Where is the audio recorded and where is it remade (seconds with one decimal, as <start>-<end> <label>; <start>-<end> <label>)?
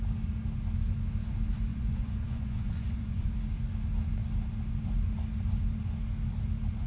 0.0-1.7 recorded; 1.7-3.3 remade; 3.3-6.9 recorded